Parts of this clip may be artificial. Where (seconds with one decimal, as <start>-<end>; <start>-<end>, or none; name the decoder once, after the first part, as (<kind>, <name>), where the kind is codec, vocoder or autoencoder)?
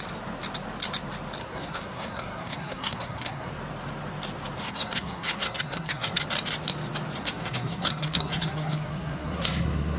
1.4-3.5 (codec, SNAC); 4.6-6.2; 7.2-10.0